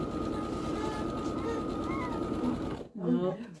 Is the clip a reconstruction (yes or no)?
no